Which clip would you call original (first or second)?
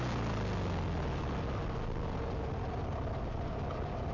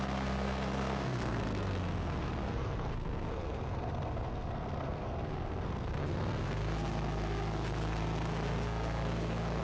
first